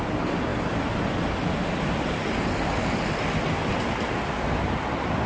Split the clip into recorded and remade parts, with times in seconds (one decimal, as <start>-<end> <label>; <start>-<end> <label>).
0.0-5.3 recorded